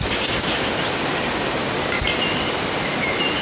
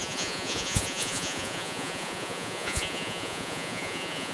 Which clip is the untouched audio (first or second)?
first